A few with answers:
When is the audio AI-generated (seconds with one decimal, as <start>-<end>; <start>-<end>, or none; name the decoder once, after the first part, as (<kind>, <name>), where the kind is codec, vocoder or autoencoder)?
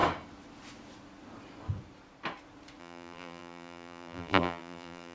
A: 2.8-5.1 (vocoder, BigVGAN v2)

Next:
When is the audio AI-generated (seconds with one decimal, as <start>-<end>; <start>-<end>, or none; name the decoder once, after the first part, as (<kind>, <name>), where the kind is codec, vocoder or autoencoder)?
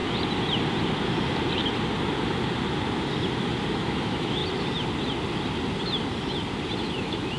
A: 3.7-4.4 (autoencoder, DAC-VAE); 6.8-7.4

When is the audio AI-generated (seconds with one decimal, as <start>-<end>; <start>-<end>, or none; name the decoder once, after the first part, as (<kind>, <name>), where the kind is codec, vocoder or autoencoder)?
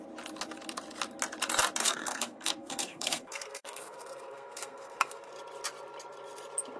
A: 1.8-5.3 (codec, SNAC)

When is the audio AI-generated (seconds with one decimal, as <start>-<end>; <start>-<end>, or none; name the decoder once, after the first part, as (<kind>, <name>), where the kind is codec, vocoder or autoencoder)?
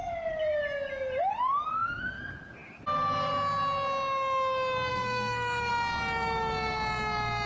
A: 1.7-2.2 (codec, SNAC); 4.9-5.7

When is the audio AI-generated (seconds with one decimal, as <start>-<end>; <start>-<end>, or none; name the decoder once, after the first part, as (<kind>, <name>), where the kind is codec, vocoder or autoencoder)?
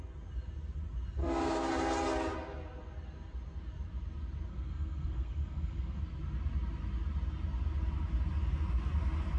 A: 1.2-1.7 (codec, SNAC); 4.5-6.0